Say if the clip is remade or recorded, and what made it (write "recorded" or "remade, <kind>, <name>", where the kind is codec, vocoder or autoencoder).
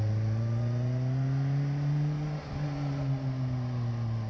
recorded